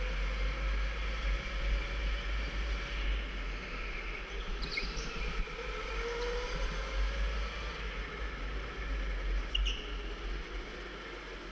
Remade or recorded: recorded